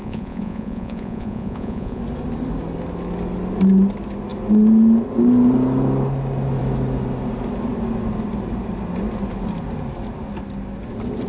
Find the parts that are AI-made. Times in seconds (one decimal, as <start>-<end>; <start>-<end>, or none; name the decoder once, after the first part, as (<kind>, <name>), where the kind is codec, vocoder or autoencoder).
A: 0.0-2.0 (vocoder, Vocos)